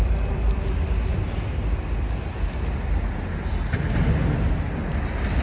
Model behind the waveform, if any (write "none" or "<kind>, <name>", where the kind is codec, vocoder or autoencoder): none